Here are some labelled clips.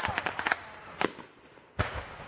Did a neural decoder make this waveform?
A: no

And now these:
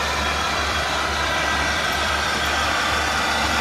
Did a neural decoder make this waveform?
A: yes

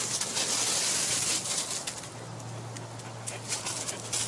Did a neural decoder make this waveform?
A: no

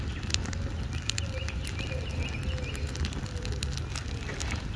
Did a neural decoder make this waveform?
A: no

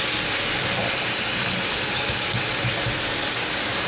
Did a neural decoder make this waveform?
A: no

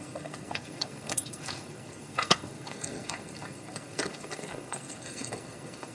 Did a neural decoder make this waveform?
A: yes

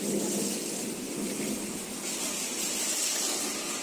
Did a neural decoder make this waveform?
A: no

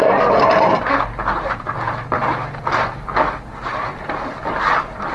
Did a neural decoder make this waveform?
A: no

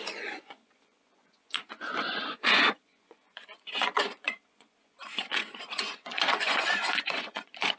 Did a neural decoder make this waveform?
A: yes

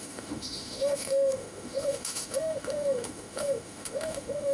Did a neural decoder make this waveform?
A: yes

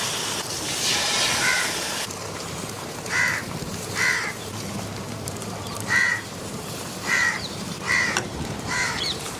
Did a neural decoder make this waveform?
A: yes